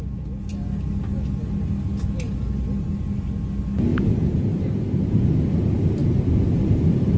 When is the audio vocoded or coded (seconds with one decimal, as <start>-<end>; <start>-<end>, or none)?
none